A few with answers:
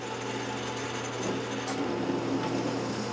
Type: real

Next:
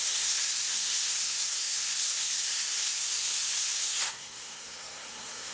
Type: fake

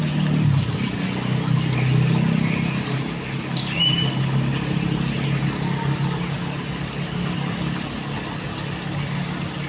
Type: real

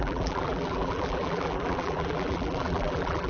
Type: fake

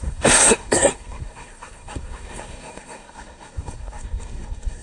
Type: fake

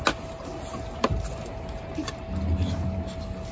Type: real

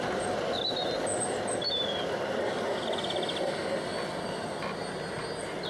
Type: real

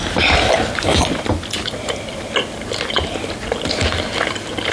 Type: real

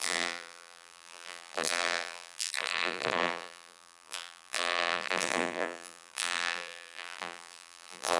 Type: fake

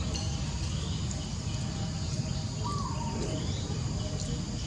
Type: real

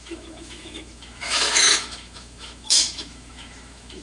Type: fake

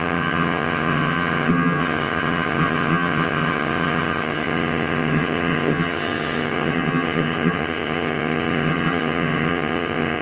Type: fake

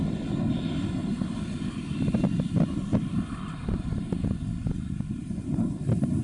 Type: real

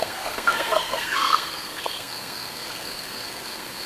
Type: fake